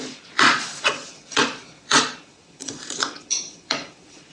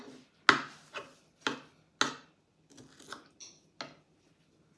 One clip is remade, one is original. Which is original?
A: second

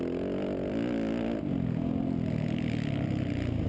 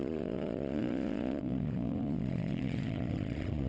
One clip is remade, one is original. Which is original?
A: first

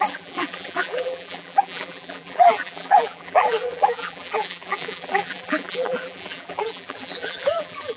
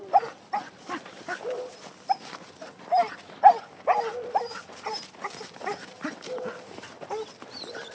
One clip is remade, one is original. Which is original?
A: second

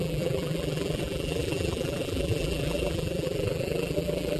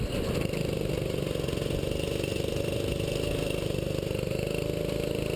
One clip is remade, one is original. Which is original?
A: second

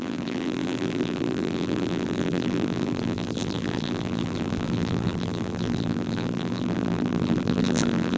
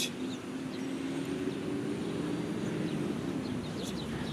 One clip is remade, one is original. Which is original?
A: second